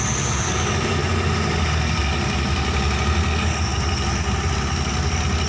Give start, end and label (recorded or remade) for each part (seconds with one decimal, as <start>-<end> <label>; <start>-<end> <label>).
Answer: 0.0-5.5 recorded

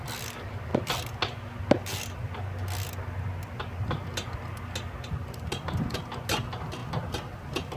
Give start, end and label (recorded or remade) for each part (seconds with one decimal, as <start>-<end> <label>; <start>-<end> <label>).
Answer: 0.0-7.8 recorded